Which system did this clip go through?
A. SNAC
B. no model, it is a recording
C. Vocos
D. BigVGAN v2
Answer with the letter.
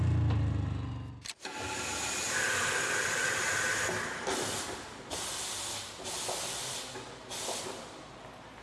B